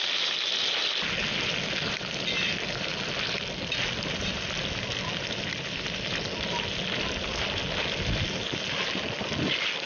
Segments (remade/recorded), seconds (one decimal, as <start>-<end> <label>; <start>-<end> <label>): 0.0-9.9 recorded